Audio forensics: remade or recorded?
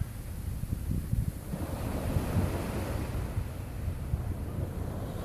recorded